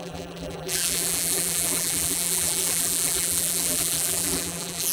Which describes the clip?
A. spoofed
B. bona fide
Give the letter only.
A